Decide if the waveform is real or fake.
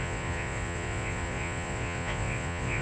fake